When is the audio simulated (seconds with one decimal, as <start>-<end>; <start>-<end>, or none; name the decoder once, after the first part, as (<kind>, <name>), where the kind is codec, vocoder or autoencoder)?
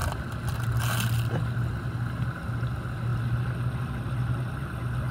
none